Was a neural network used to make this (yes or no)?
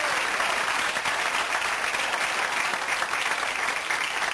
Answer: no